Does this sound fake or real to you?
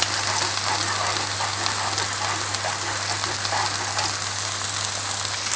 real